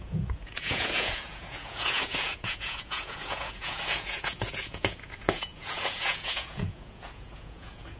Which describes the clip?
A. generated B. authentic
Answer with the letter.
A